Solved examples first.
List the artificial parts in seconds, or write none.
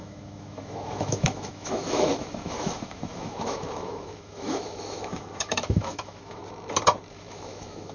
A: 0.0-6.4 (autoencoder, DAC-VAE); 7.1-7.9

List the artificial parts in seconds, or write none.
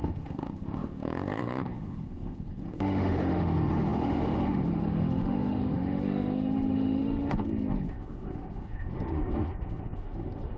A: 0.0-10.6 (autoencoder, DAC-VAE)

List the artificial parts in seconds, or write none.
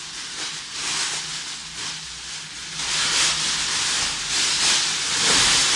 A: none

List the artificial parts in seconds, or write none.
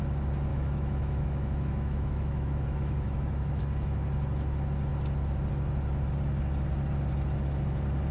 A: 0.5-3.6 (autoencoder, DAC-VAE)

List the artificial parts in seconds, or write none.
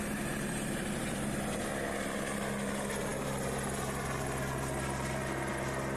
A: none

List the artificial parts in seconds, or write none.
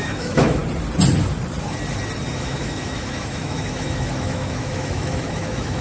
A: 0.0-0.6 (autoencoder, DAC-VAE); 2.3-5.8